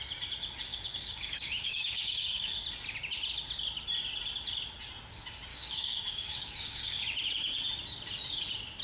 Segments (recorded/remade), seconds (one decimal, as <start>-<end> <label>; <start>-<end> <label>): 0.0-0.7 recorded; 0.7-2.5 remade; 2.5-5.5 recorded; 5.5-7.0 remade; 7.0-8.8 recorded